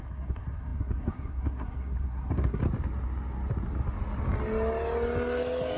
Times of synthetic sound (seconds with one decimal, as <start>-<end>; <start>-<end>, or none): 0.0-2.6

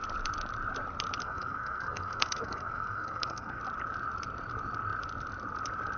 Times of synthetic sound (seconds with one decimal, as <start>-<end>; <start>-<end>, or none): 1.2-3.6

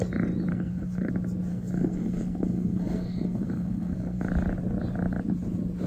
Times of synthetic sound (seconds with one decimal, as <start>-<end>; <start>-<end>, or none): 0.5-1.1; 1.5-4.3